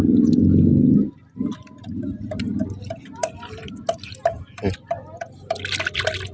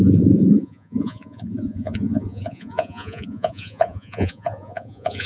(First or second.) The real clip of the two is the first